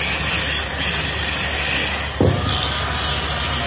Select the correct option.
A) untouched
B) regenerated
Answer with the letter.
A